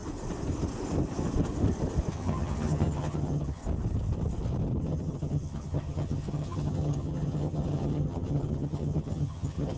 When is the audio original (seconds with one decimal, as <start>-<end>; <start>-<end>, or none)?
0.0-2.1; 3.6-4.8